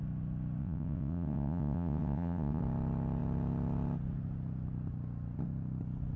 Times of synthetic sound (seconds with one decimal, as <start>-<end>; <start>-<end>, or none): 0.6-2.6